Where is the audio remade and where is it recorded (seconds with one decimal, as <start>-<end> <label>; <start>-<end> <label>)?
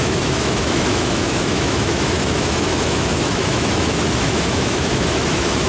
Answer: 0.0-5.7 remade